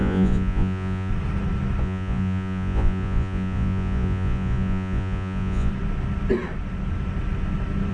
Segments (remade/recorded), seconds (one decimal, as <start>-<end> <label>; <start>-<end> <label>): 0.0-1.1 remade; 1.1-1.8 recorded; 1.8-5.7 remade; 5.7-7.9 recorded